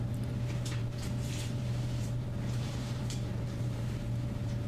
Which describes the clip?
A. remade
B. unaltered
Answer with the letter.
A